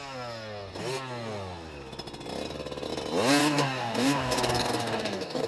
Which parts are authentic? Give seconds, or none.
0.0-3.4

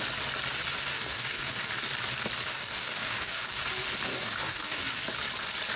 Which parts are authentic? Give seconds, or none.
0.0-0.8; 1.7-2.5; 3.6-4.1; 5.0-5.8

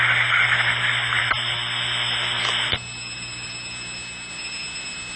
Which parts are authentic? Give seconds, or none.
0.0-5.2

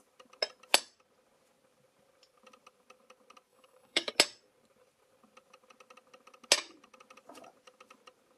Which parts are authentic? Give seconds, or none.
0.0-3.5; 4.1-8.4